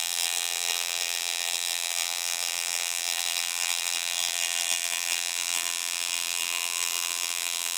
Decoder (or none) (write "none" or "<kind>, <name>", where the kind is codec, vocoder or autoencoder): vocoder, BigVGAN v2